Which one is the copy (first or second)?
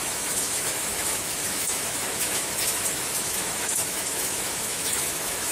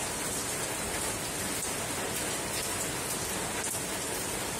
first